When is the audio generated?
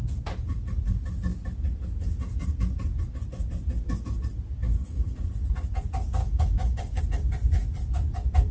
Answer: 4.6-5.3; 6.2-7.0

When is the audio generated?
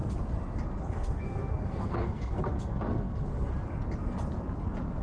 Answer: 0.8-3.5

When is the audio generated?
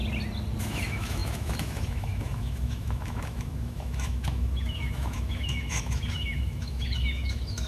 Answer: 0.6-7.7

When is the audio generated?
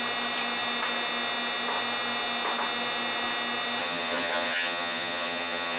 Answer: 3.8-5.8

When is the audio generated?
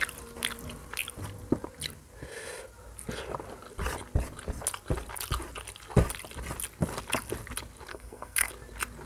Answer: 7.9-8.5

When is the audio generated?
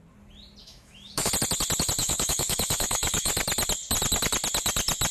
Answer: 0.6-1.3; 2.0-3.3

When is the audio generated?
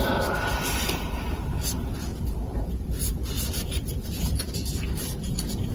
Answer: 2.1-5.7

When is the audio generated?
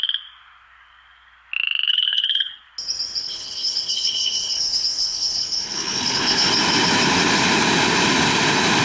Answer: 1.9-2.6; 3.2-6.5